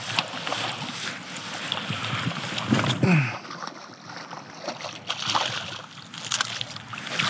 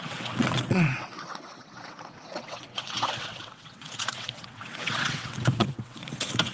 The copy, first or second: second